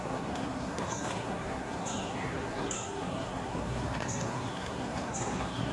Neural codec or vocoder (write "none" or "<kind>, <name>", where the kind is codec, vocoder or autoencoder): codec, SNAC